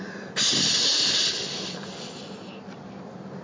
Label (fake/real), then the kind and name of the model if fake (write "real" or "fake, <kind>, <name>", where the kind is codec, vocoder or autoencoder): real